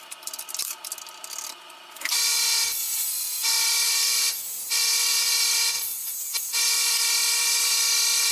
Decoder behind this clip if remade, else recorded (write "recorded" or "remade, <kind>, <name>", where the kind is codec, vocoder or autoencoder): recorded